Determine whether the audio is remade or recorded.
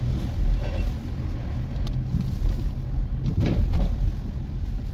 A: recorded